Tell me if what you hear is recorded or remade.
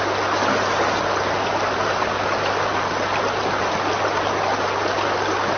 recorded